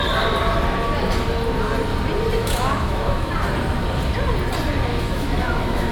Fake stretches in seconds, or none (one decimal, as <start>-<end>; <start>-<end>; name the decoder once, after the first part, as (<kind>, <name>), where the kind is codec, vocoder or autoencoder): 2.4-3.3 (autoencoder, DAC-VAE); 4.9-5.9